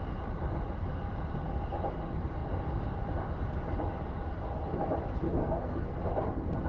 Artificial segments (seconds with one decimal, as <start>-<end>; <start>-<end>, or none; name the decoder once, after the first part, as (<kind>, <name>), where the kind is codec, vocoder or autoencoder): 5.4-6.0 (codec, SNAC)